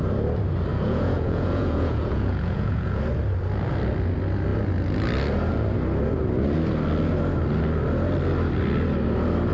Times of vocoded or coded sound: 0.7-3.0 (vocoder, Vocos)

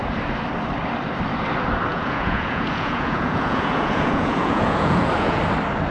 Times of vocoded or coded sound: 1.9-5.4 (vocoder, Vocos)

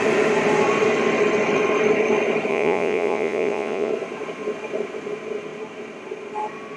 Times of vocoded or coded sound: 2.5-3.9 (vocoder, Vocos)

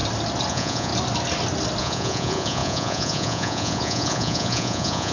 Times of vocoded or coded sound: 0.5-0.9 (vocoder, Vocos); 1.8-5.1

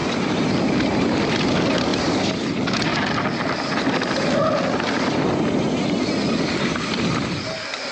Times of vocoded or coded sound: none

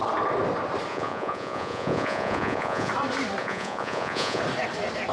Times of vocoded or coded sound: 0.9-2.9 (vocoder, Vocos); 3.4-4.4

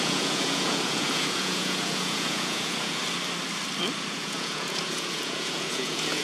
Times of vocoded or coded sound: 0.0-3.0 (vocoder, Vocos); 4.1-6.2

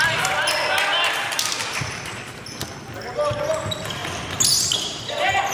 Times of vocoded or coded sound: none